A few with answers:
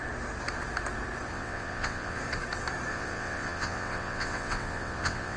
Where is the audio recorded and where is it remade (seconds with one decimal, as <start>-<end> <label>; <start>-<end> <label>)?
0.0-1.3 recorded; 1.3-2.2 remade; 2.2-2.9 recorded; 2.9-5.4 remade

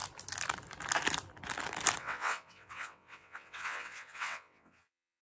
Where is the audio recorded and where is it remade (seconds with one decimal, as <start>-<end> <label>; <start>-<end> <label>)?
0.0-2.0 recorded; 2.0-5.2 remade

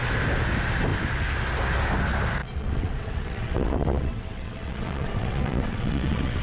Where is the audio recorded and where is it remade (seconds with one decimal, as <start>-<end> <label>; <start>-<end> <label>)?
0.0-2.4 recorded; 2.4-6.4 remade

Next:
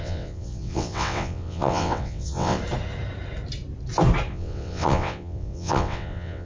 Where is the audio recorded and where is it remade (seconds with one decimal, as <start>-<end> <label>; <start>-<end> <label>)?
0.0-2.6 remade; 2.6-4.3 recorded; 4.3-6.5 remade

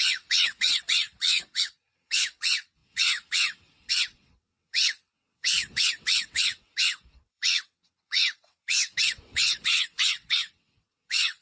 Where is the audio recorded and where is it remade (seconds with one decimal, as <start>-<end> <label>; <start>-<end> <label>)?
0.0-11.4 remade

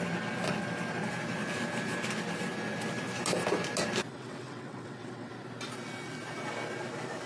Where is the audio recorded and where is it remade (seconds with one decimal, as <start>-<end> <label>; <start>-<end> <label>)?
0.0-4.1 recorded; 4.1-5.3 remade; 5.3-7.3 recorded

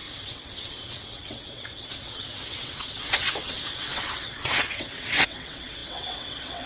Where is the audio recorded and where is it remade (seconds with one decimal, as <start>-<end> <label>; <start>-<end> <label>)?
0.0-6.7 remade

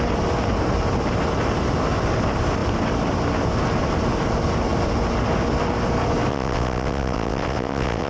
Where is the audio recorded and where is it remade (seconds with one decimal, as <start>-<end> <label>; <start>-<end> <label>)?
0.0-6.3 recorded; 6.3-8.1 remade